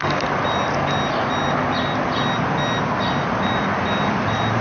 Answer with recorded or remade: recorded